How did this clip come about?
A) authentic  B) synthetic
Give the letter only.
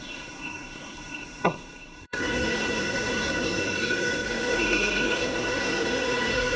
B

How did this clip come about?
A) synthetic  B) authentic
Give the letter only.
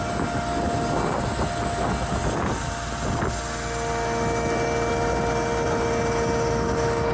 B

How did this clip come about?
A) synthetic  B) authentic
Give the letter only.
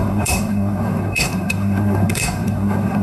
A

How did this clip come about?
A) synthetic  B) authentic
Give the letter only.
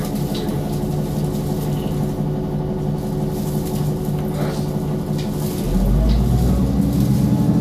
B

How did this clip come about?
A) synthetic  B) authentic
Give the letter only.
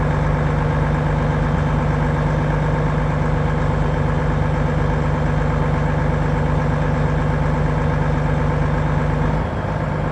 B